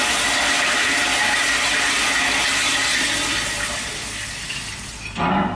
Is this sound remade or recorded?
recorded